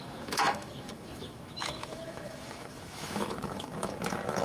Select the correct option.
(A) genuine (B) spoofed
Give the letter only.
B